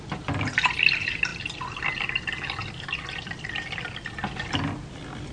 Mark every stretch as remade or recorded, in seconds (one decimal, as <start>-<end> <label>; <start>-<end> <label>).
0.0-5.3 recorded